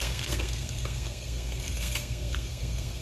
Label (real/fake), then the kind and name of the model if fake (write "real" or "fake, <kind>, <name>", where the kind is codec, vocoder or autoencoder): fake, codec, SNAC